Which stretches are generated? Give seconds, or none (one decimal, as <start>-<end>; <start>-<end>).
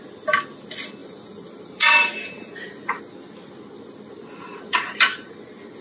1.0-3.0; 4.5-5.8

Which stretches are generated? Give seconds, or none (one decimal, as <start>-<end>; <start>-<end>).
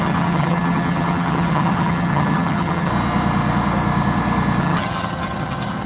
0.0-2.9; 4.6-5.9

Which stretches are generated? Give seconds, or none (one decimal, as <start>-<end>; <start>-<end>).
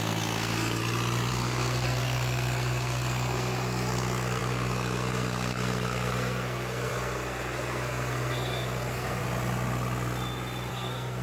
0.0-0.8; 1.3-9.2; 10.7-11.2